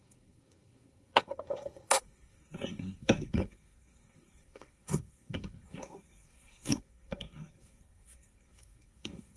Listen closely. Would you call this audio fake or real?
fake